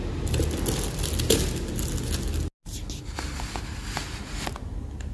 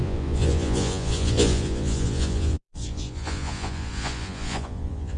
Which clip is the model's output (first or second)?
second